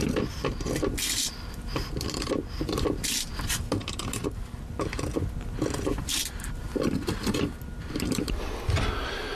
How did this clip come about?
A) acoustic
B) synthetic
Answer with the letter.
A